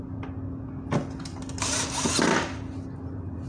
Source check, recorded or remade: recorded